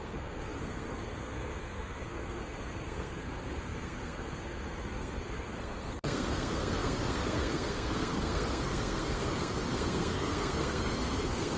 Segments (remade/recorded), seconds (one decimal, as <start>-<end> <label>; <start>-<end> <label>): 0.0-11.6 remade